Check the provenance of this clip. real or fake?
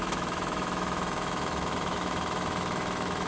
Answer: fake